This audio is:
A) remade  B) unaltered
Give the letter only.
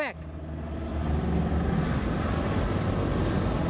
B